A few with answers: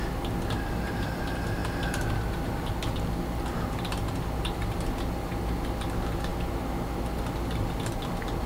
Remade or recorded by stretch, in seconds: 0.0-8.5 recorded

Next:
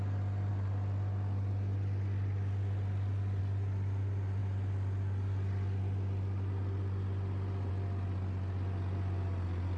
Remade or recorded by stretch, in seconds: 0.0-9.8 recorded

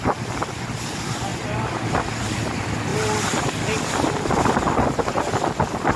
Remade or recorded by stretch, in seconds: 0.0-6.0 recorded